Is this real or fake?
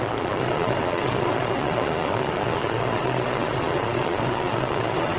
fake